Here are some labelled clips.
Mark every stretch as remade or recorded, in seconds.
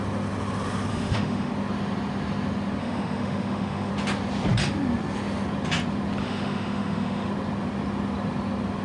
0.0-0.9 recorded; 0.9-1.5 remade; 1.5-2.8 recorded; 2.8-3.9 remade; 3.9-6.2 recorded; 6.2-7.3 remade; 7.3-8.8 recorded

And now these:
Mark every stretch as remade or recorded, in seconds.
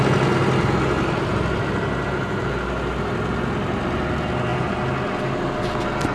0.0-6.1 recorded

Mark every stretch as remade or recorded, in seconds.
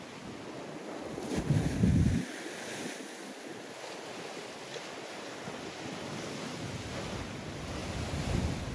0.0-8.7 recorded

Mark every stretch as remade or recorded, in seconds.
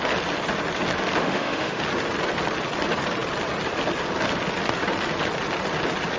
0.0-1.2 recorded; 1.2-1.8 remade; 1.8-6.2 recorded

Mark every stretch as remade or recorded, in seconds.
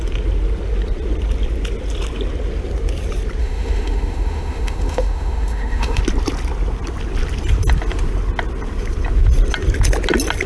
0.0-3.4 recorded; 3.4-6.0 remade; 6.0-10.5 recorded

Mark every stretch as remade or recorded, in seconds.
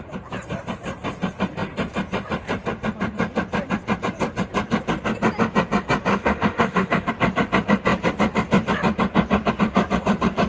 0.0-6.1 recorded; 6.1-7.1 remade; 7.1-10.5 recorded